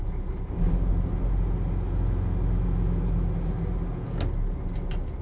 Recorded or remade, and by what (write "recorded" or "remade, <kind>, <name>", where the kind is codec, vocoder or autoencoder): recorded